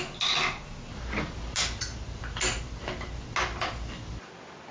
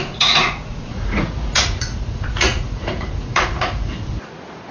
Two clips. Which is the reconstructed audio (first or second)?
second